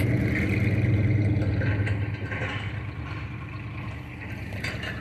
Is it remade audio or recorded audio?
recorded